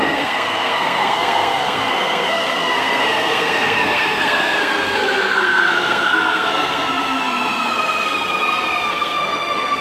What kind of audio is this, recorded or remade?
remade